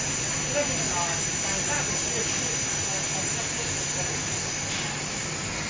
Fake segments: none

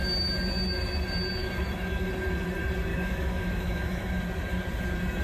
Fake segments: 1.4-2.1; 2.9-4.2

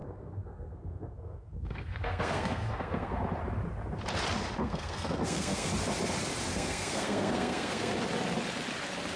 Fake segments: 0.0-3.2; 4.6-5.7; 6.5-7.9